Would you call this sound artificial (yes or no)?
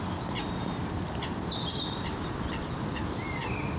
no